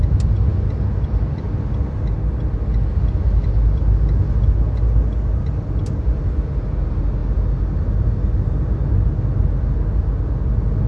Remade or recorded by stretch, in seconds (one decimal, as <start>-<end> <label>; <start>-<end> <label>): 0.0-10.9 recorded